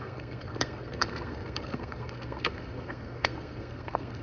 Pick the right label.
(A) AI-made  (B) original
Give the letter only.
A